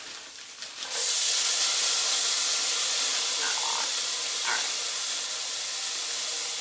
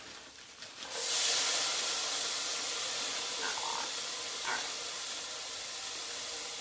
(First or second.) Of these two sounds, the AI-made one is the second